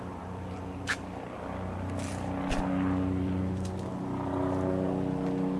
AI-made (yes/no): yes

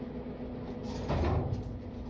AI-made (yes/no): no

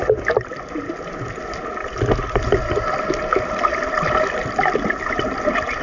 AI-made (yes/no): no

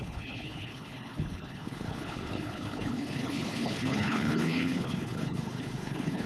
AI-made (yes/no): yes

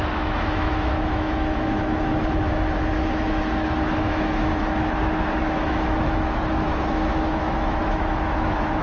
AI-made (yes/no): yes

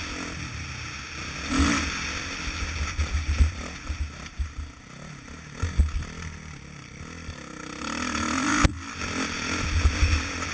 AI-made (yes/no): no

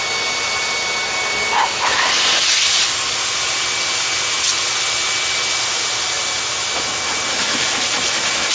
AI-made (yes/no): no